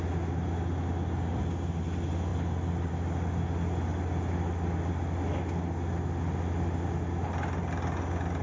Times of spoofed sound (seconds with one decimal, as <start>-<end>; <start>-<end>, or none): none